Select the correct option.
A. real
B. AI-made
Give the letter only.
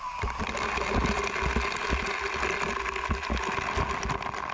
A